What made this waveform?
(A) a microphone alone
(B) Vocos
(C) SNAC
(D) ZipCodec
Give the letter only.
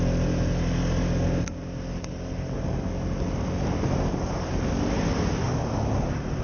A